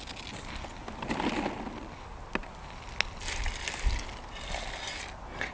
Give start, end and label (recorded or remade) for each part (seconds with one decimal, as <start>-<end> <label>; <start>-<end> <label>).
0.0-5.5 recorded